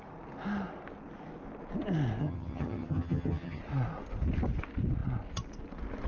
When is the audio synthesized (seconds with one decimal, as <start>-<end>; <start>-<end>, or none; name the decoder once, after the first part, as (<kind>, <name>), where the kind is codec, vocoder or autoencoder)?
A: 2.2-3.6 (vocoder, HiFi-GAN)